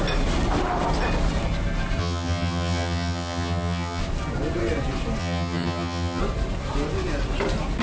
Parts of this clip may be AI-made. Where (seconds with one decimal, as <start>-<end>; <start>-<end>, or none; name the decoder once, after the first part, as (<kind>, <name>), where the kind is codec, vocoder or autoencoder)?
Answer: 2.0-4.0 (vocoder, HiFi-GAN); 5.2-6.2